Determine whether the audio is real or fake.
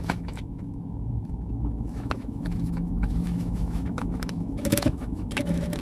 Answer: fake